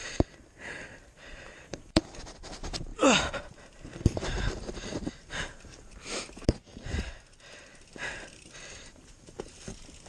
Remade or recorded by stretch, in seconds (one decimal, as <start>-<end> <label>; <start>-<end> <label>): 0.0-0.7 recorded; 0.7-6.7 remade; 6.7-8.3 recorded; 8.3-10.1 remade